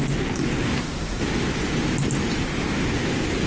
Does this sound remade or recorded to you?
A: recorded